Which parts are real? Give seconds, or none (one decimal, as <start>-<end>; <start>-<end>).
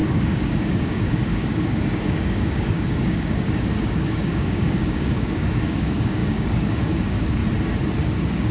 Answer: 7.4-8.0